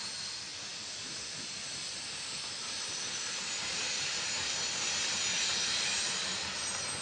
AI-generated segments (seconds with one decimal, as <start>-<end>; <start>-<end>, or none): none